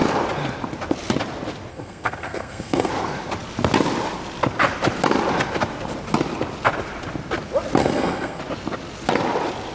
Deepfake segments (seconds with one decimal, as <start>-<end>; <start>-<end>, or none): 1.7-2.9; 7.8-8.4